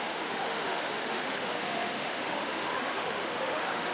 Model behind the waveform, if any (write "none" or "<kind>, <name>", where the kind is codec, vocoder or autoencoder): autoencoder, DAC-VAE